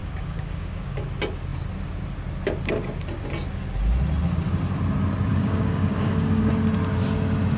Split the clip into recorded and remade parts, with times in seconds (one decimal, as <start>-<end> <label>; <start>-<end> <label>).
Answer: 0.0-1.0 remade; 1.0-5.3 recorded; 5.3-6.5 remade; 6.5-7.6 recorded